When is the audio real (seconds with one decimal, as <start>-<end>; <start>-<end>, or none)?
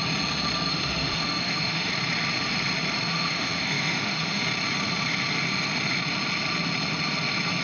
0.0-0.7; 1.9-3.1; 4.4-7.6